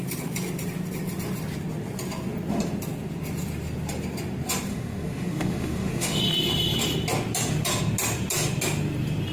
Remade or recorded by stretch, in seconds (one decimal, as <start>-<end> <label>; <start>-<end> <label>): 0.0-4.7 recorded; 4.7-6.2 remade; 6.2-9.3 recorded